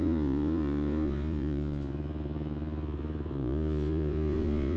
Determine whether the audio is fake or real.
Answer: fake